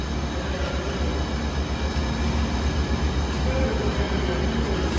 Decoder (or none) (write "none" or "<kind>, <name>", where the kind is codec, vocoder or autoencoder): none